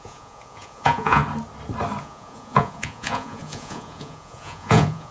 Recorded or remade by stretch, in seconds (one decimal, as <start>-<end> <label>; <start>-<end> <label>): 0.0-1.2 remade; 1.2-2.0 recorded; 2.0-5.1 remade